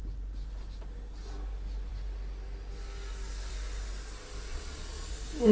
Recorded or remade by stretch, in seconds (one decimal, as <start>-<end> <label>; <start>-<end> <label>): 0.0-4.5 recorded; 4.5-5.1 remade; 5.1-5.5 recorded